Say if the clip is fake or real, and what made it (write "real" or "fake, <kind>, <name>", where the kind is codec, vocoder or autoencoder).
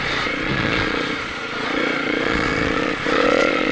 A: fake, vocoder, Vocos